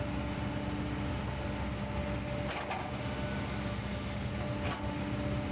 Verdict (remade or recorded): recorded